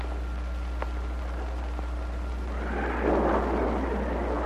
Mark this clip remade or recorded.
recorded